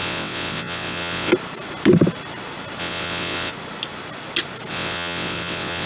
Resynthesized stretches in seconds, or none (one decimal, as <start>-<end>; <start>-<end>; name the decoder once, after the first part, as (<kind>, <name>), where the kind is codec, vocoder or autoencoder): 0.0-1.3 (vocoder, WaveNeXt); 2.8-3.5; 4.7-5.9